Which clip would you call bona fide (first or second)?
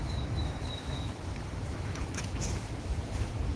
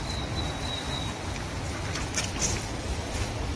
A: second